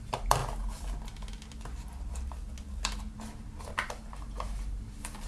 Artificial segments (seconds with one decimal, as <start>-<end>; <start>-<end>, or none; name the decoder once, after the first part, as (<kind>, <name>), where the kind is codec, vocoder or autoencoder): 0.0-0.4 (vocoder, BigVGAN v2); 3.6-5.3